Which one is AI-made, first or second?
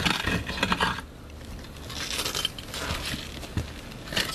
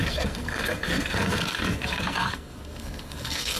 second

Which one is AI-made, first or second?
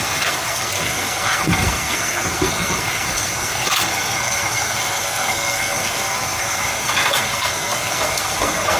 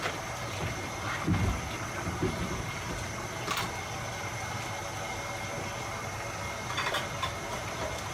first